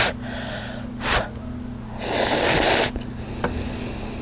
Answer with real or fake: real